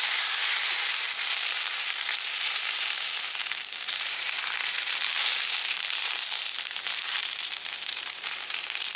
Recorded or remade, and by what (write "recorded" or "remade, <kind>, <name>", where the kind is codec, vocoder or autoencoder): remade, vocoder, BigVGAN v2